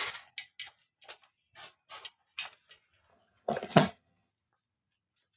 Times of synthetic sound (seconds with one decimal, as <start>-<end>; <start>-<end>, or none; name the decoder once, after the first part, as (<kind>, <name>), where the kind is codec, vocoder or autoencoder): 3.1-4.3 (vocoder, HiFi-GAN)